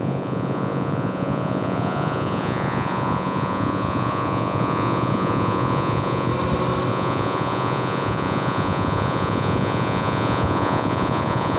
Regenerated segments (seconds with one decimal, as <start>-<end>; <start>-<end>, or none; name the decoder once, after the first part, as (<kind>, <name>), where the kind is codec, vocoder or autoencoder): 0.0-6.3 (vocoder, Vocos); 6.9-11.6